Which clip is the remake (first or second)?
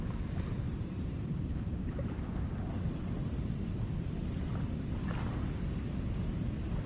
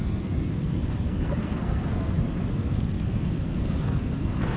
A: second